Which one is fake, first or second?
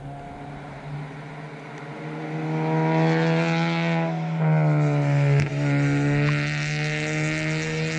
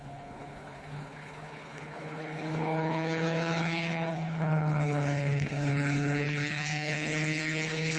second